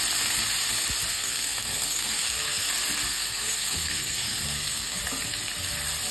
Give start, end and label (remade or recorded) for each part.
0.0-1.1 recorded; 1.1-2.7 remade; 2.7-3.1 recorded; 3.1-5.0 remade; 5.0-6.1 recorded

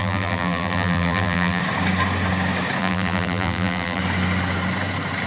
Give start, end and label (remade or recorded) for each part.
0.0-1.6 remade; 1.6-2.8 recorded; 2.8-4.0 remade; 4.0-5.3 recorded

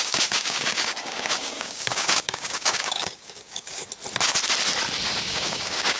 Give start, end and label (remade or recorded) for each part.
0.0-3.8 remade; 3.8-5.2 recorded; 5.2-6.0 remade